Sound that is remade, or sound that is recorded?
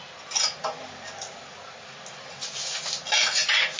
recorded